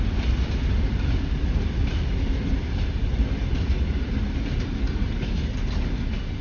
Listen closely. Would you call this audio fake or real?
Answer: real